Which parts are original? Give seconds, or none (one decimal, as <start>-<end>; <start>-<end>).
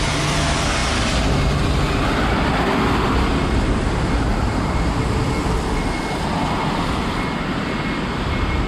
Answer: 0.0-4.3; 5.0-8.7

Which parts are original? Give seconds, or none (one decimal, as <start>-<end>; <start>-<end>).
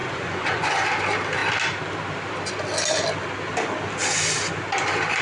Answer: 0.7-5.2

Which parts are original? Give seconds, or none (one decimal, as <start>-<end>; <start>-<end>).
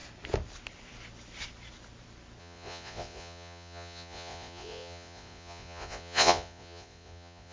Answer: 0.0-2.4